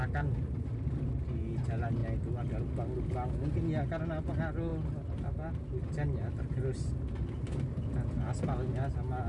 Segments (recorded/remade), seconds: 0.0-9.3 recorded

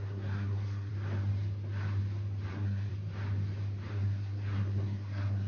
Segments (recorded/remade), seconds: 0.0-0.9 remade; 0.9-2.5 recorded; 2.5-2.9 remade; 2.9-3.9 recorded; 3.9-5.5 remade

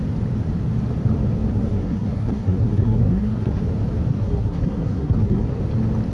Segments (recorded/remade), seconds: 0.0-1.5 recorded; 1.5-3.6 remade; 3.6-4.1 recorded; 4.1-5.6 remade; 5.6-6.1 recorded

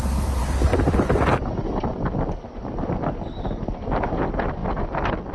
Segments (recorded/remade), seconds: 0.0-5.3 recorded

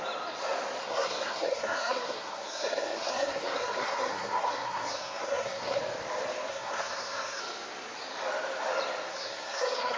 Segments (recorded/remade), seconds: 0.0-0.8 recorded; 0.8-5.8 remade; 5.8-6.5 recorded; 6.5-7.4 remade; 7.4-9.1 recorded; 9.1-10.0 remade

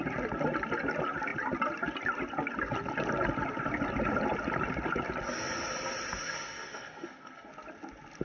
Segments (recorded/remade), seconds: 0.0-6.2 recorded; 6.2-7.5 remade; 7.5-8.2 recorded

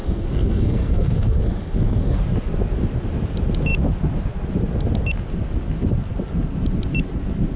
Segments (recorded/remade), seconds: 0.0-2.2 remade; 2.2-7.6 recorded

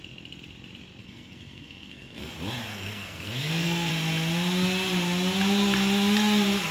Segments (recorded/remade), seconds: 0.0-1.0 recorded; 1.0-2.3 remade; 2.3-2.7 recorded; 2.7-3.9 remade; 3.9-6.7 recorded